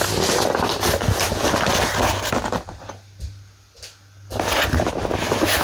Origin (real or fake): real